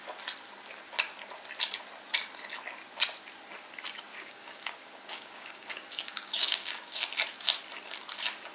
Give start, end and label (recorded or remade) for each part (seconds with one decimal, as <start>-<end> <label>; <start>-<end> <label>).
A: 0.0-4.1 recorded; 4.1-7.0 remade; 7.0-8.5 recorded